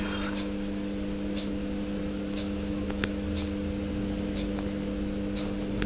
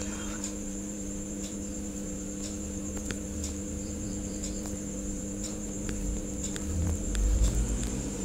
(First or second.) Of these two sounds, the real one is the first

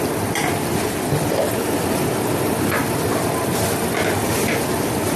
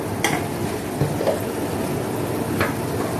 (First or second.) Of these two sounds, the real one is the second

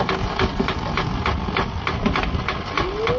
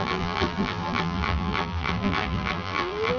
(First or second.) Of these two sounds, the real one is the first